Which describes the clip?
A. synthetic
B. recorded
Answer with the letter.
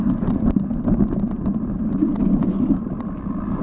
B